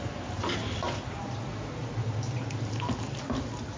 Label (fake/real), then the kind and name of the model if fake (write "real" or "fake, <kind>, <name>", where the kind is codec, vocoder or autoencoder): real